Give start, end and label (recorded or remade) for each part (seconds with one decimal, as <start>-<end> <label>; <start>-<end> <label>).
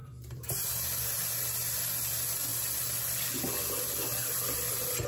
0.0-1.0 remade; 1.0-5.1 recorded